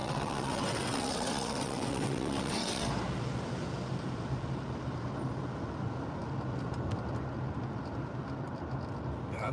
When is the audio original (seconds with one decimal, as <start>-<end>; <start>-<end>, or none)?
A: 2.9-9.5